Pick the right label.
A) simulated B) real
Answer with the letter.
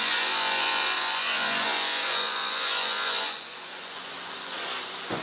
A